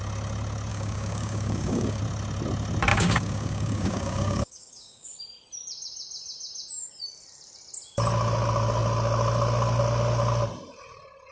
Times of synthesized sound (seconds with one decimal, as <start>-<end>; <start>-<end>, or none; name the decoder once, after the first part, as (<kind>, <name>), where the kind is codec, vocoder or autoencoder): 0.7-2.0 (codec, DAC); 2.9-5.2